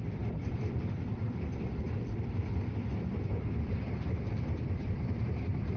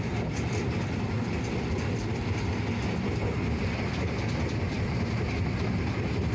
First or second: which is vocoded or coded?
first